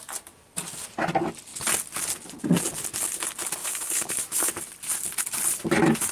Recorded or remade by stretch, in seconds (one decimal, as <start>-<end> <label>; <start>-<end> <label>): 0.0-3.6 recorded; 3.6-4.5 remade; 4.5-6.1 recorded